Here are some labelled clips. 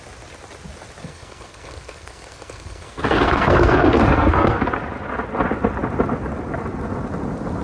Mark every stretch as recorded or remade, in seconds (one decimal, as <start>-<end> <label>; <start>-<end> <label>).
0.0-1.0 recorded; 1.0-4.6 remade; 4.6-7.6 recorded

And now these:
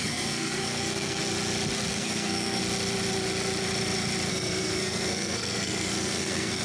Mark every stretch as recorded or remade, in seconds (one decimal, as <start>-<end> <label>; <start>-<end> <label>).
0.0-1.2 remade; 1.2-1.9 recorded; 1.9-2.6 remade; 2.6-4.3 recorded; 4.3-6.6 remade

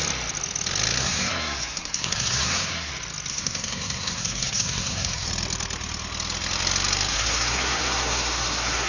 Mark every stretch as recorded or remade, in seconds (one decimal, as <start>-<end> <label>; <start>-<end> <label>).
0.0-1.0 recorded; 1.0-2.9 remade; 2.9-3.3 recorded; 3.3-5.3 remade; 5.3-7.1 recorded; 7.1-8.9 remade